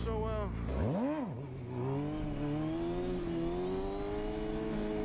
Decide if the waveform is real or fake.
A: real